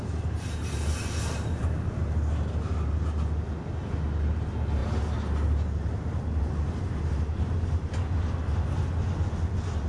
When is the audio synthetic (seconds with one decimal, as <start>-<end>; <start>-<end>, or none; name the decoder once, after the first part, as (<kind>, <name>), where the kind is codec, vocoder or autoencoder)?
none